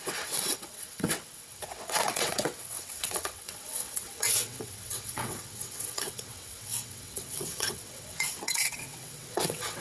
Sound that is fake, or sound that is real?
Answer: fake